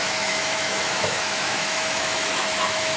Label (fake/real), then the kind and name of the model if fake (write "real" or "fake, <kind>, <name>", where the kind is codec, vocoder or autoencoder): fake, autoencoder, DAC-VAE